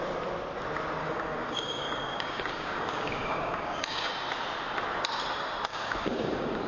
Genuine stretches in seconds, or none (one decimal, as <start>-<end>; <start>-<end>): 0.0-1.0; 4.1-5.7